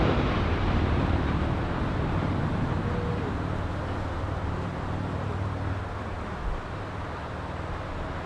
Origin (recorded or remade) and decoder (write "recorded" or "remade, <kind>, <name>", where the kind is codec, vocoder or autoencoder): recorded